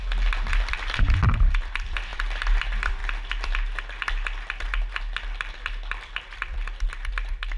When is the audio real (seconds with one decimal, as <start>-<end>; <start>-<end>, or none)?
0.0-1.0; 2.1-2.6; 3.0-5.0